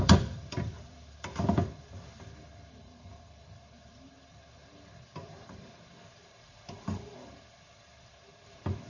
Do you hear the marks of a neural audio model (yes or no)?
yes